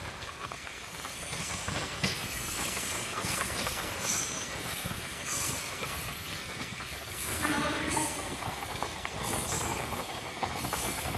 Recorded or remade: remade